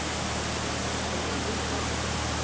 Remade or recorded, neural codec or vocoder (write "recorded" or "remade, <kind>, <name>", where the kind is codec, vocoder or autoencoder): recorded